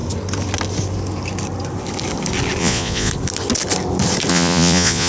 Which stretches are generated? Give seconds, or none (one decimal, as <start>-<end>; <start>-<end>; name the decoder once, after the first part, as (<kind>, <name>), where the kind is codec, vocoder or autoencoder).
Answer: 2.6-3.1 (vocoder, Vocos); 4.3-5.1